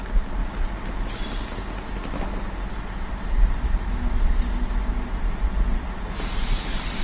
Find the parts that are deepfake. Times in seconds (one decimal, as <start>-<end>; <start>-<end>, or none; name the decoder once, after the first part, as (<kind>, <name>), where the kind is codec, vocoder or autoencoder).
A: none